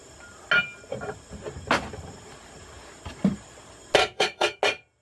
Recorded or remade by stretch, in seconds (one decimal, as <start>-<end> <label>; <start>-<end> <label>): 0.0-4.0 recorded; 4.0-4.6 remade; 4.6-5.0 recorded